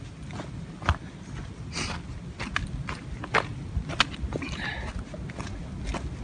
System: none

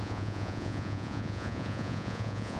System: vocoder, Vocos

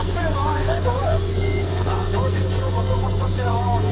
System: codec, SNAC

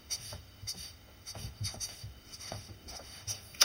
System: autoencoder, DAC-VAE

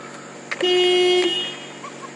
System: none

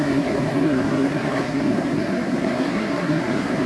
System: codec, SNAC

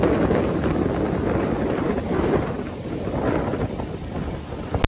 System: none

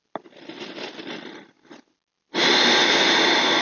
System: none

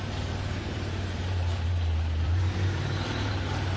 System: vocoder, BigVGAN v2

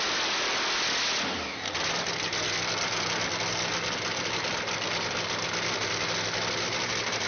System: none